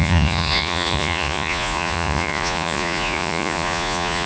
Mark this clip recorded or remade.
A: remade